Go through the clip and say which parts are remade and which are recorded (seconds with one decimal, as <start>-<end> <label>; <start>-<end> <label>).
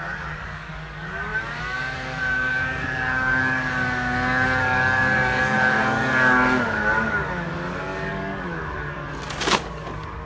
0.0-10.3 remade